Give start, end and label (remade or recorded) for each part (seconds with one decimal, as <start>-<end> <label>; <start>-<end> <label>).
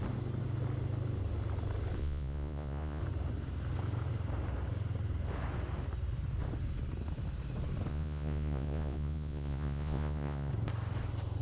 0.0-2.0 recorded; 2.0-3.0 remade; 3.0-7.9 recorded; 7.9-10.5 remade; 10.5-11.4 recorded